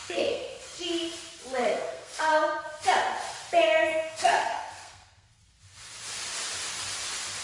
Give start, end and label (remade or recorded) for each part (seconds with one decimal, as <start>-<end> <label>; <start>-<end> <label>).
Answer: 0.0-0.8 remade; 0.8-1.6 recorded; 1.6-2.3 remade; 2.3-3.9 recorded; 3.9-5.4 remade; 5.4-7.4 recorded